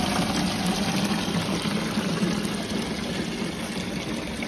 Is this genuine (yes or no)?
yes